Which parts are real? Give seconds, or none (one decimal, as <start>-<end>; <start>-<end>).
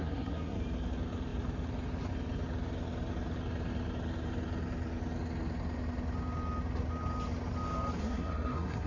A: 0.6-8.0